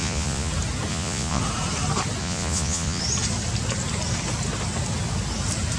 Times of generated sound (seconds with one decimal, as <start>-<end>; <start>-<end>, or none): 0.0-0.5; 0.9-1.4; 2.2-3.0